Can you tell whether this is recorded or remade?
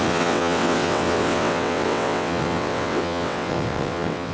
remade